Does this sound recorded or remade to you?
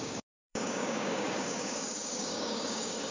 remade